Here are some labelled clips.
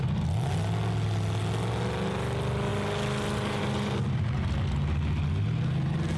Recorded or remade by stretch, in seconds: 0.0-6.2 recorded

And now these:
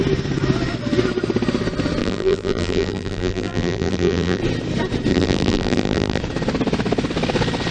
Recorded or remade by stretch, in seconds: 0.0-2.0 recorded; 2.0-4.4 remade; 4.4-5.1 recorded; 5.1-6.2 remade; 6.2-7.7 recorded

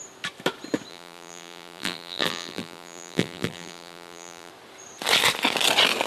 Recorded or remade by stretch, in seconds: 0.0-0.9 recorded; 0.9-4.5 remade; 4.5-6.1 recorded